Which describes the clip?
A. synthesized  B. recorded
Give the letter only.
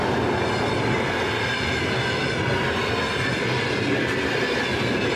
B